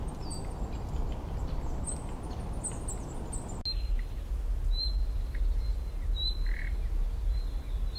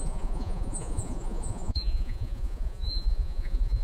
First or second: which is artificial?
second